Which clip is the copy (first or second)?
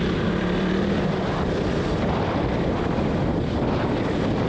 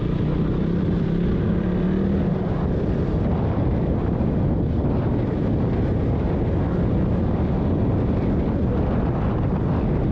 first